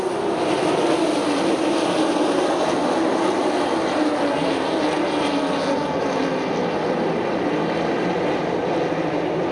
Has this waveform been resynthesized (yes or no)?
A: no